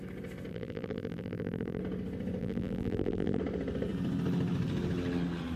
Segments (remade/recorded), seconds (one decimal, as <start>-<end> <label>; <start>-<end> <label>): 0.0-0.5 recorded; 0.5-1.8 remade; 1.8-2.4 recorded; 2.4-3.4 remade; 3.4-5.6 recorded